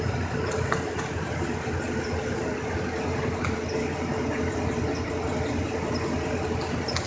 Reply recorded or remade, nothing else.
recorded